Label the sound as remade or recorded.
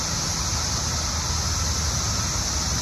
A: recorded